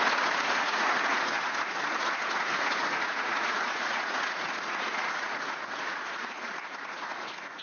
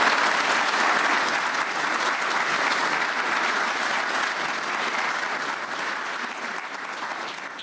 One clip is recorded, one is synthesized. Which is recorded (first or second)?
second